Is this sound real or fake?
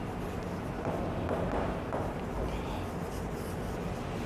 real